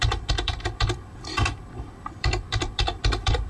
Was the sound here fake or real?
fake